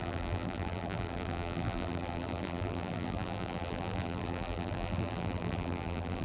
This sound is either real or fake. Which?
fake